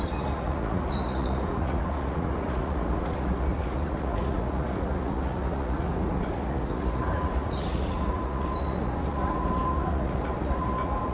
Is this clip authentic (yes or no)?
no